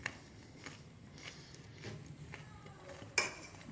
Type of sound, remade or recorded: recorded